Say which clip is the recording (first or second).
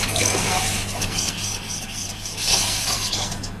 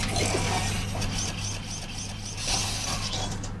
second